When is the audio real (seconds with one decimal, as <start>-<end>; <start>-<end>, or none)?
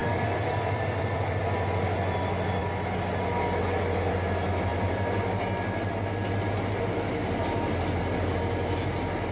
0.0-9.3